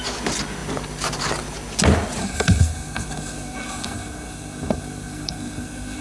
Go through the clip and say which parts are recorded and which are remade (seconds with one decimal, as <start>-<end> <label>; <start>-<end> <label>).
0.0-2.2 recorded; 2.2-6.0 remade